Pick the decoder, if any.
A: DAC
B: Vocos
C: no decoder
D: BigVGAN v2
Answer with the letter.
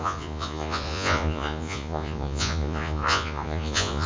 B